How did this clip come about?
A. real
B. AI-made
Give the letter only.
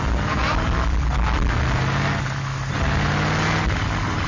A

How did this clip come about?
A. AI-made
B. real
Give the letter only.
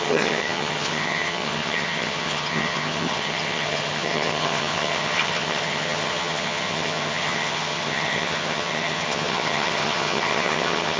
A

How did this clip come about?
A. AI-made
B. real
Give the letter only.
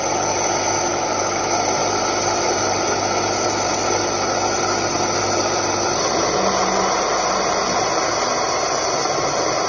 B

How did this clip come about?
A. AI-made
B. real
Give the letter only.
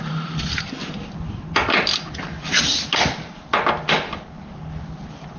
B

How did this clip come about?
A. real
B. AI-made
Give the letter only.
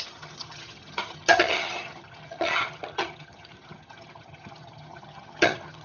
B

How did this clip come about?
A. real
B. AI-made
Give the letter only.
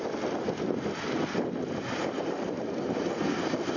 A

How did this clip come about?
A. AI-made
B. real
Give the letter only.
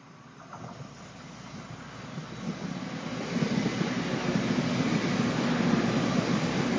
B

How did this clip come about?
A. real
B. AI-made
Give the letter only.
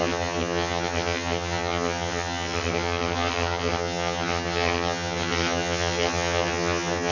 B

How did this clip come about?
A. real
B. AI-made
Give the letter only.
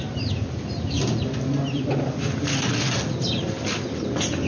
A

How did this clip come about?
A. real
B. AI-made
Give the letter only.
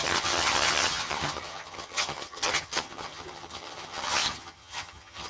B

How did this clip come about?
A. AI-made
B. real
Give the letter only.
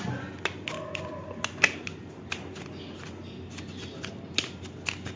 B